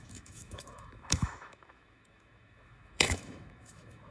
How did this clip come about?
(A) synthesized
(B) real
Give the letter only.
A